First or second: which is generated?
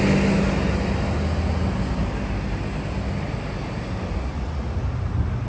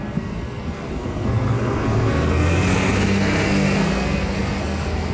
second